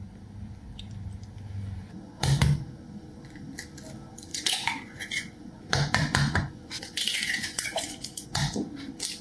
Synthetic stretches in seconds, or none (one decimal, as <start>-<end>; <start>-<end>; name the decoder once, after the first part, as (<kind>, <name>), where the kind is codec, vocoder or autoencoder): 1.8-2.4 (vocoder, Vocos); 4.3-8.7